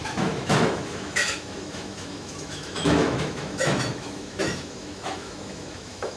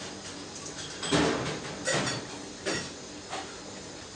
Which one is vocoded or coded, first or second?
first